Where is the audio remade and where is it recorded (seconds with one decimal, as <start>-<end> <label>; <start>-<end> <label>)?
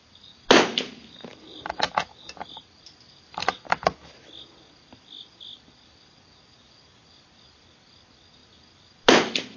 0.0-9.6 recorded